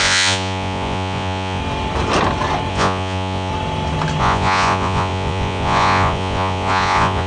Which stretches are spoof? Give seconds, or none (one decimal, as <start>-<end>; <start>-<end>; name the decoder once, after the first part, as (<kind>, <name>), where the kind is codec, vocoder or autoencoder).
0.0-1.6 (vocoder, Vocos); 2.7-3.5; 4.2-7.3